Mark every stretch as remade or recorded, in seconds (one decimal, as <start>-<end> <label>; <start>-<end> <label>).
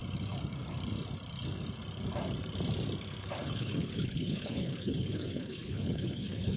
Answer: 0.0-3.4 recorded; 3.4-6.6 remade